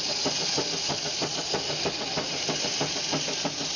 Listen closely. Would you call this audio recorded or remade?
recorded